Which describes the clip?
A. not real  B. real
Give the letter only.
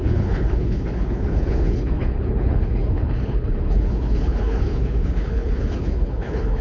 A